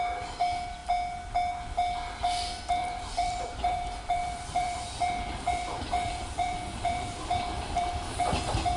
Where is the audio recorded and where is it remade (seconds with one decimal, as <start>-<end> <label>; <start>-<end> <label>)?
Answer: 0.0-2.8 recorded; 2.8-7.9 remade; 7.9-8.8 recorded